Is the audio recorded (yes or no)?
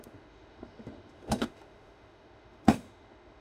no